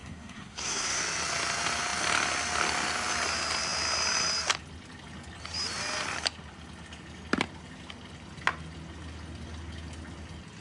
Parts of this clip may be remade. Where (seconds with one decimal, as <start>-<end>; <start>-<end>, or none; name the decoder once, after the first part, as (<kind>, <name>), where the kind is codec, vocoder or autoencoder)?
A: 0.0-1.0 (codec, SNAC)